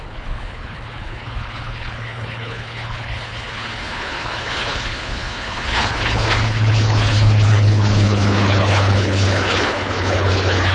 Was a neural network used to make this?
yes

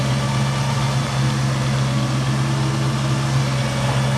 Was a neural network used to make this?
no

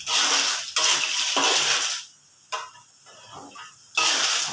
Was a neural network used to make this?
no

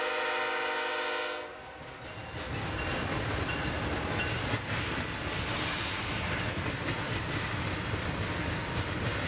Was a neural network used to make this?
no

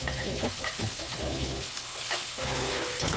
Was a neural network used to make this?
yes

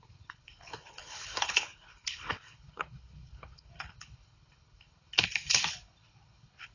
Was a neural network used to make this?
yes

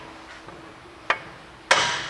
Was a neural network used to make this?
no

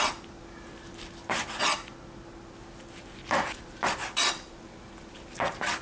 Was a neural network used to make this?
no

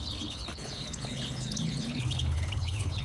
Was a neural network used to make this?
yes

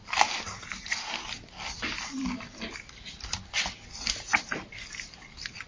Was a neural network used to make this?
no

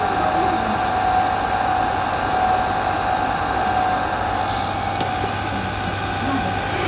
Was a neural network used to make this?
no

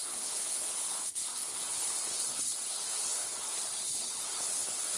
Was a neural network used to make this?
yes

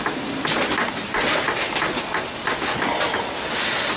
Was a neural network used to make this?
no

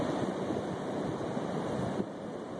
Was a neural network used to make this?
no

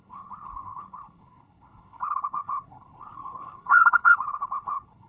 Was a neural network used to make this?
yes